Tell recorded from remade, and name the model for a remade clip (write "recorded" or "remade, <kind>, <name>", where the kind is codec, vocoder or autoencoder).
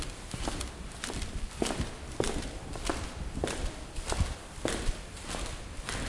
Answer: remade, vocoder, BigVGAN v2